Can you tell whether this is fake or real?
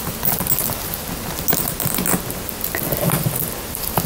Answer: real